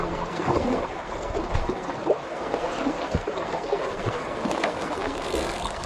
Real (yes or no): no